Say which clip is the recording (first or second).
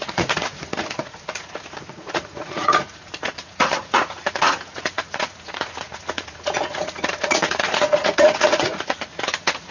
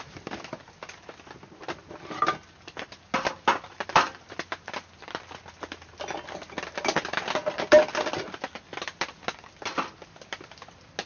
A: second